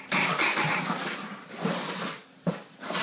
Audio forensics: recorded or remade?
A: recorded